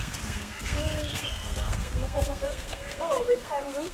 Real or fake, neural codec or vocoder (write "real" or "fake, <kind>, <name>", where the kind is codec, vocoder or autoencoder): fake, codec, SNAC